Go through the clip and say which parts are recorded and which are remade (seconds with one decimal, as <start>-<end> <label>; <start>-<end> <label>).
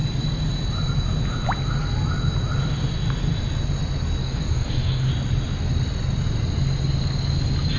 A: 0.0-4.2 recorded; 4.2-5.1 remade; 5.1-7.8 recorded